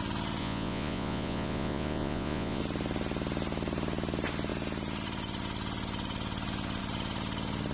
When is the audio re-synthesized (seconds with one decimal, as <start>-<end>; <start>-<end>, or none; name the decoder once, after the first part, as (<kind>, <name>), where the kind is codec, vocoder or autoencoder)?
0.4-2.6 (vocoder, Vocos)